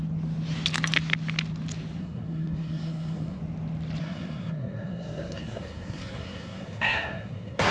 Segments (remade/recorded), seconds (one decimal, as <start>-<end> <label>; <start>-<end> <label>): 0.0-2.0 recorded; 2.0-3.4 remade; 3.4-4.0 recorded; 4.0-7.7 remade